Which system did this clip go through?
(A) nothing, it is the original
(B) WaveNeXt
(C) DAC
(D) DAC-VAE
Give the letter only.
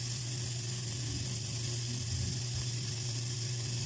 A